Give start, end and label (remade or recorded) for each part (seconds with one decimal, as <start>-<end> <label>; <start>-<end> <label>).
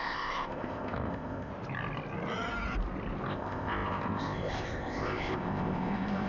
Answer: 0.0-1.5 remade; 1.5-3.3 recorded; 3.3-6.3 remade